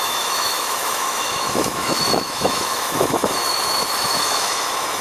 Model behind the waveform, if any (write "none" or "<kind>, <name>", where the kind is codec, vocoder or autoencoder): autoencoder, DAC-VAE